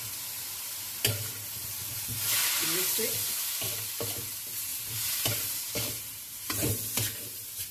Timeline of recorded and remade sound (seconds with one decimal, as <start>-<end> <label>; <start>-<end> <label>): 0.0-4.7 recorded; 4.7-6.7 remade; 6.7-7.7 recorded